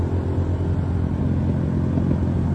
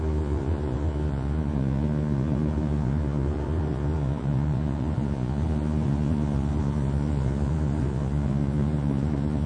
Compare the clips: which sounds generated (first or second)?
second